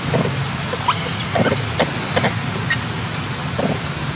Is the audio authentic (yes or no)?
yes